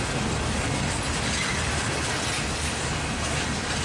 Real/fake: real